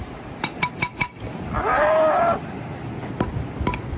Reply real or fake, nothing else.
real